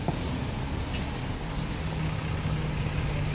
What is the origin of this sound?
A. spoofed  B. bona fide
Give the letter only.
B